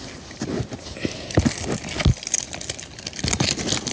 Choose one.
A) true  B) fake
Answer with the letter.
A